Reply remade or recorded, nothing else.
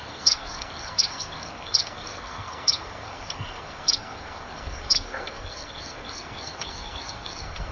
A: remade